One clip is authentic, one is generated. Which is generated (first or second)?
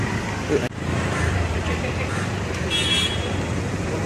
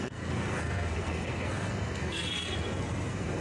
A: second